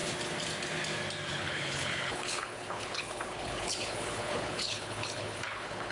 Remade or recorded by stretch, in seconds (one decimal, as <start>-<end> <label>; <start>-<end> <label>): 0.0-1.3 recorded; 1.3-5.9 remade